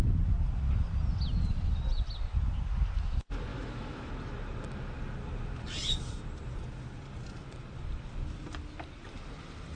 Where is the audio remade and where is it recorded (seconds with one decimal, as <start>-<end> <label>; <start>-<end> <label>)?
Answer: 0.0-3.5 recorded; 3.5-4.1 remade; 4.1-9.8 recorded